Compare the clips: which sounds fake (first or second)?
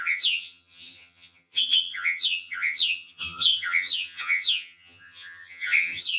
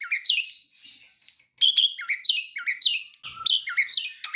first